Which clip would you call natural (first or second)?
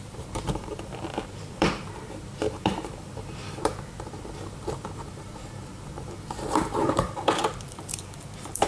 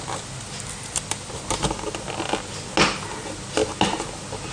second